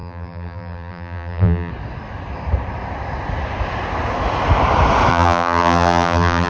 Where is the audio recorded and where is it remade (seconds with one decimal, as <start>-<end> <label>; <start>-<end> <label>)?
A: 0.0-1.7 remade; 1.7-5.1 recorded; 5.1-6.5 remade